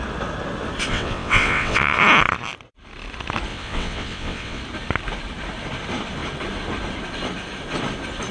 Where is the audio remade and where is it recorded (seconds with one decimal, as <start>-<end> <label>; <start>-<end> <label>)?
0.0-0.9 recorded; 0.9-2.0 remade; 2.0-3.5 recorded; 3.5-4.6 remade; 4.6-8.3 recorded